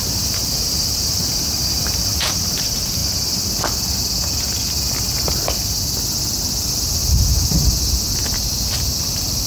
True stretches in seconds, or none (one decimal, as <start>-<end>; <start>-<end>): 3.0-6.7; 7.6-8.5